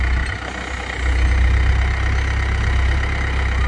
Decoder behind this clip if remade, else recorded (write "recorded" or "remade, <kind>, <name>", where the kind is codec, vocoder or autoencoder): recorded